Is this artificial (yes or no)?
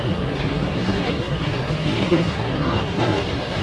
yes